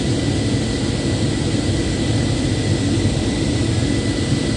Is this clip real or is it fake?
real